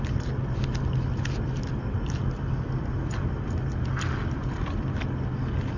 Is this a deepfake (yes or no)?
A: no